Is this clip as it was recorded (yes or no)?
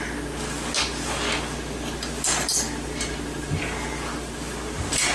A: yes